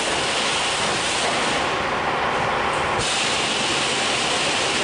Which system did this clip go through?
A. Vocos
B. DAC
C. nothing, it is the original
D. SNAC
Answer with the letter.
C